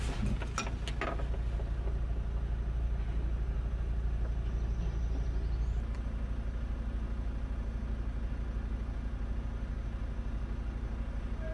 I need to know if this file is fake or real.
real